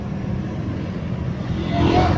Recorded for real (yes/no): yes